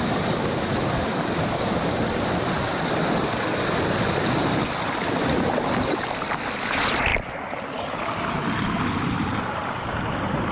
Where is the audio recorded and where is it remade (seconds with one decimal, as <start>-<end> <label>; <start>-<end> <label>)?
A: 0.0-10.5 recorded